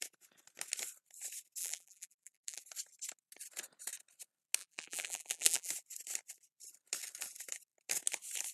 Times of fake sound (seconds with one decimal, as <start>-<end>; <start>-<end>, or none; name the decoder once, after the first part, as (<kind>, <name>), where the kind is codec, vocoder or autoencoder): 1.6-2.6 (vocoder, BigVGAN v2); 4.6-5.7